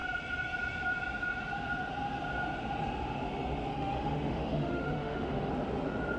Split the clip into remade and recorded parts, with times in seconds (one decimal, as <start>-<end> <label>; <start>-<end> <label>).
0.0-3.7 recorded; 3.7-5.5 remade; 5.5-6.2 recorded